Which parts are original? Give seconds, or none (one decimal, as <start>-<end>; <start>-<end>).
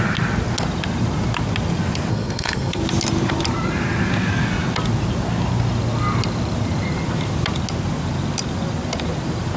0.0-2.1; 2.8-9.6